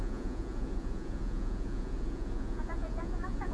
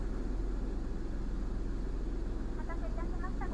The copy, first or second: first